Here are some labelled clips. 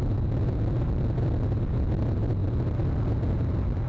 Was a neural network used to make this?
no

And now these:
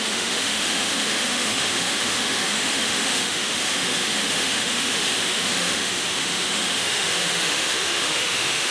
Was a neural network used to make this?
yes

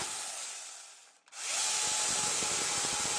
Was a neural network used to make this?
no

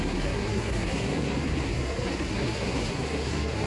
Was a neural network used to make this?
yes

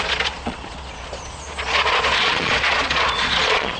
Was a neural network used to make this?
yes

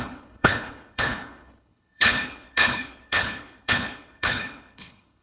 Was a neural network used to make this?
yes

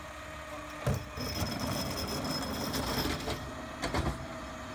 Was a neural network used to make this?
no